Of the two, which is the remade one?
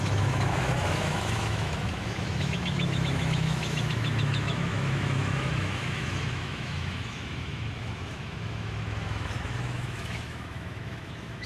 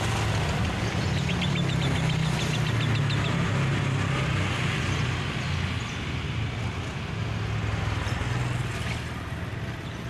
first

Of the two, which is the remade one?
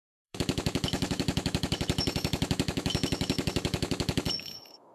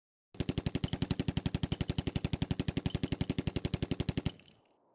first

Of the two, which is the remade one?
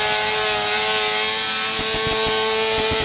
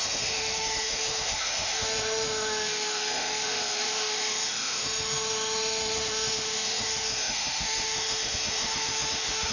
second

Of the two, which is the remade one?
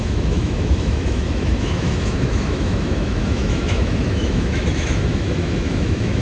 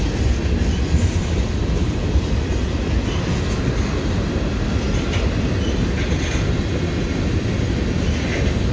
first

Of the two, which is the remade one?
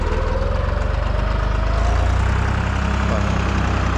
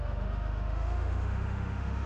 second